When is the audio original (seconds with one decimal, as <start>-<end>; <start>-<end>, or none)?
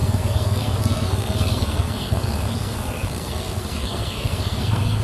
none